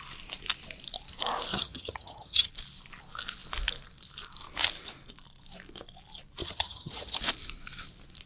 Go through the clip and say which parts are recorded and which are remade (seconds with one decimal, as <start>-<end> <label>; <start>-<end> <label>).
0.0-1.5 recorded; 1.5-2.5 remade; 2.5-6.4 recorded; 6.4-7.2 remade; 7.2-8.3 recorded